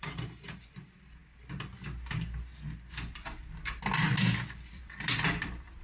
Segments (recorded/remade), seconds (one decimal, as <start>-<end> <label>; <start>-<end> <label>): 0.0-1.2 remade; 1.2-4.7 recorded; 4.7-5.8 remade